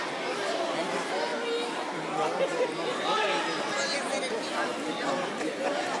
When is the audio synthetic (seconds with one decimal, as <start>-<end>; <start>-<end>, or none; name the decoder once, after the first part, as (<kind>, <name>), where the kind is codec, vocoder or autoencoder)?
none